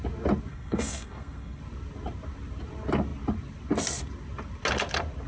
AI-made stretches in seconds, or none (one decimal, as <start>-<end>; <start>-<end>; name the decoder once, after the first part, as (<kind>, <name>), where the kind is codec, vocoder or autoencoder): 0.5-1.6 (codec, SNAC)